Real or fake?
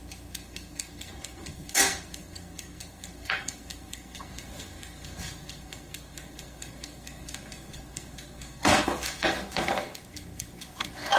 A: fake